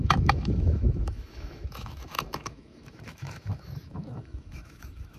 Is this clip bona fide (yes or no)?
no